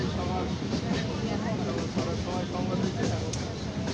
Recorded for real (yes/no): yes